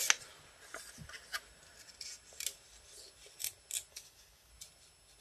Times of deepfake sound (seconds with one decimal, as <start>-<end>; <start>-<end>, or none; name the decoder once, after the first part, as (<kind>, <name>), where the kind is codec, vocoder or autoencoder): 3.9-4.5 (codec, DAC)